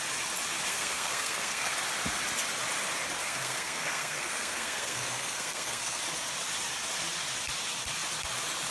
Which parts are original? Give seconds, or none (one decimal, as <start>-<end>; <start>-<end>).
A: 0.0-0.7; 1.7-3.2; 6.0-8.7